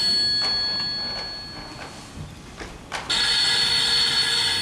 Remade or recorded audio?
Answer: recorded